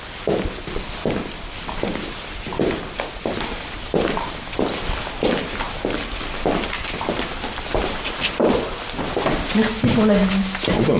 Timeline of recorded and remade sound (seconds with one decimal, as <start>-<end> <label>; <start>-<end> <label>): 0.0-11.0 recorded